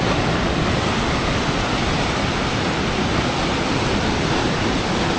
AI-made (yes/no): no